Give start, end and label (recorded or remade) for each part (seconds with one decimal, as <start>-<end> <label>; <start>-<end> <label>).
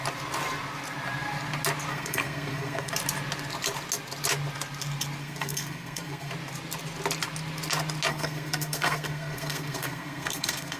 0.0-1.9 recorded; 1.9-2.9 remade; 2.9-5.2 recorded; 5.2-6.3 remade; 6.3-8.1 recorded; 8.1-10.8 remade